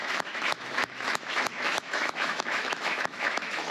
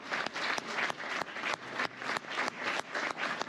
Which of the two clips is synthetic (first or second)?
first